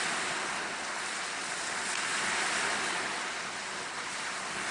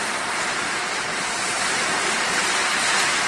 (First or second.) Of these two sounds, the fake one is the second